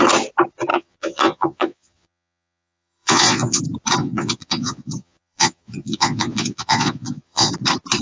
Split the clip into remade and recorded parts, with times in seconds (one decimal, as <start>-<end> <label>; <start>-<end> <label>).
0.0-0.7 recorded; 0.7-3.6 remade; 3.6-4.0 recorded; 4.0-7.5 remade; 7.5-8.0 recorded